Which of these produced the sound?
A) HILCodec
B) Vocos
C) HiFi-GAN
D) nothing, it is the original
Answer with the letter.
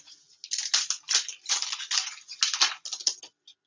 D